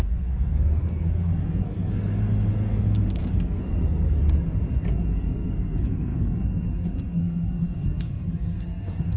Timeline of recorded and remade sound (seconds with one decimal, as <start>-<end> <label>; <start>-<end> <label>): 0.0-4.2 remade; 4.2-5.1 recorded; 5.1-9.2 remade